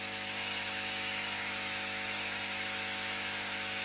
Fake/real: fake